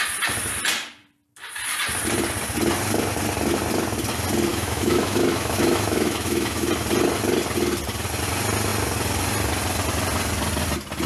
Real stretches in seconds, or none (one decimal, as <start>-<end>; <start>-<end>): 0.0-4.5; 6.7-11.1